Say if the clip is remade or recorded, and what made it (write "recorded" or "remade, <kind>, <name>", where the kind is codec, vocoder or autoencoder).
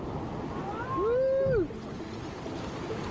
recorded